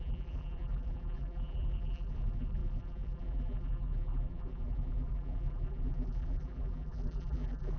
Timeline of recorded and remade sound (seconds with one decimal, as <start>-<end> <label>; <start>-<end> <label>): 0.0-7.8 remade